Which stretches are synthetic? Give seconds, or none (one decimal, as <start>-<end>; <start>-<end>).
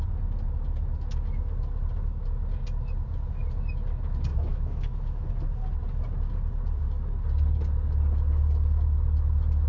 4.3-5.3